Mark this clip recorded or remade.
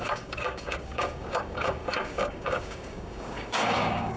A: remade